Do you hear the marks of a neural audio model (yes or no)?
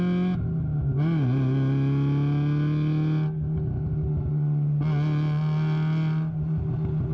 no